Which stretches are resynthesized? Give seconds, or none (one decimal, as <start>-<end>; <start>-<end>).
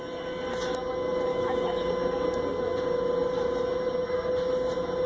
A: 1.3-1.9